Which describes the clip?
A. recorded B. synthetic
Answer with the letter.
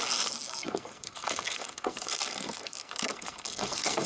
B